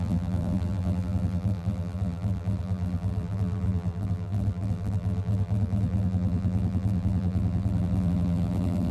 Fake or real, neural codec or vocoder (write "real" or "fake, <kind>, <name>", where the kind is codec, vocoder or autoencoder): fake, vocoder, BigVGAN v2